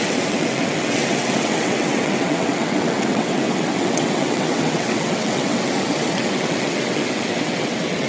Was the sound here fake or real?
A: fake